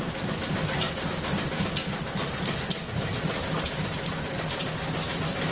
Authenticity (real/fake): real